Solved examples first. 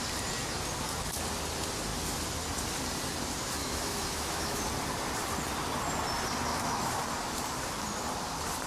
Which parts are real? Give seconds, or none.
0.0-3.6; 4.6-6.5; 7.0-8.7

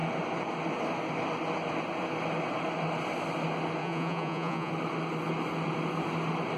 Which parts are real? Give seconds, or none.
0.0-3.8; 4.7-6.6

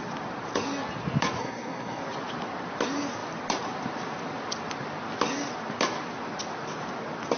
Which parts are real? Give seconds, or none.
0.0-1.4; 2.0-7.4

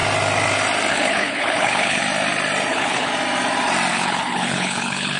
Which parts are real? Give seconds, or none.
0.0-0.9; 2.0-2.7; 3.1-3.9

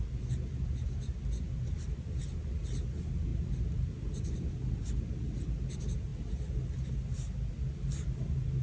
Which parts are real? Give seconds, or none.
0.0-8.6

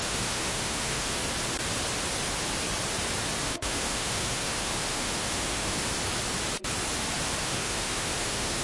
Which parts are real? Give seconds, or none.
1.2-3.4; 5.8-7.4

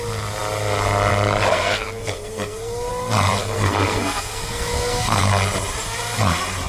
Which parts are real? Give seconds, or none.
0.0-1.5; 2.9-3.4; 5.2-6.7

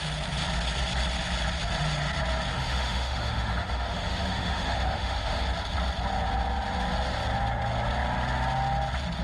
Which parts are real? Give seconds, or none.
0.0-2.5; 5.4-9.2